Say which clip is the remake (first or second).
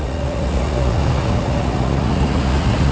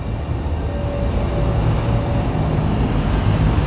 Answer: first